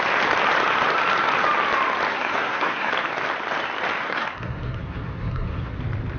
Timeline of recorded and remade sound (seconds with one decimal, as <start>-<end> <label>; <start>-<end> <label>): 0.0-2.1 recorded; 2.1-2.9 remade; 2.9-4.0 recorded; 4.0-5.8 remade; 5.8-6.2 recorded